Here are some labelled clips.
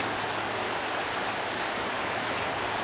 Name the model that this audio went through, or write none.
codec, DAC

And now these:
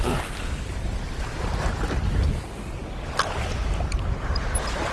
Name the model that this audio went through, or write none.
none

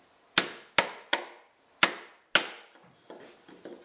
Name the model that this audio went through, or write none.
none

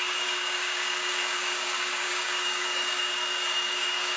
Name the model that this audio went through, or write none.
codec, DAC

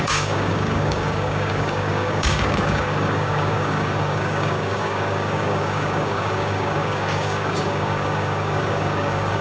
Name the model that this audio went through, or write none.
codec, DAC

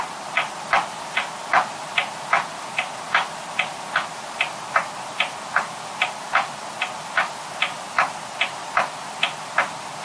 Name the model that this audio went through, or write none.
none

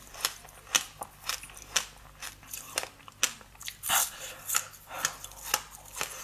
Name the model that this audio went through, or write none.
none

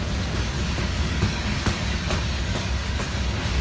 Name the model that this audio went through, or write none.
codec, DAC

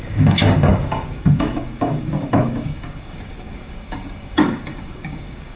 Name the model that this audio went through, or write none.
codec, DAC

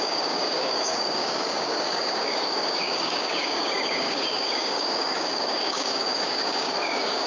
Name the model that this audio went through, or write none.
codec, DAC